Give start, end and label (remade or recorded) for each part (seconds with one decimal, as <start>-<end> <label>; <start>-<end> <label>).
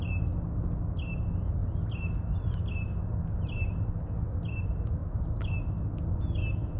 0.0-6.8 recorded